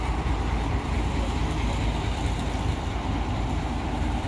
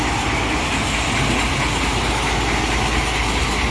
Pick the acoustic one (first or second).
second